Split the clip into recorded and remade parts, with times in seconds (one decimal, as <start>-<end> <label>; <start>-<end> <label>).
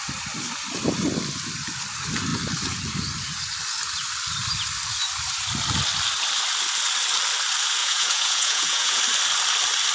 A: 0.0-7.8 recorded; 7.8-9.0 remade; 9.0-9.9 recorded